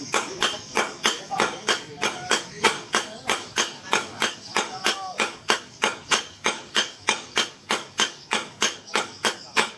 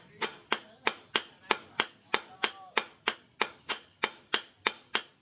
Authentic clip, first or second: second